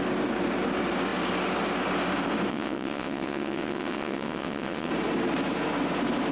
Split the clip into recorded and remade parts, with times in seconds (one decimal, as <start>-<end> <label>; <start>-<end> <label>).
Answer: 0.0-2.5 recorded; 2.5-4.9 remade; 4.9-6.3 recorded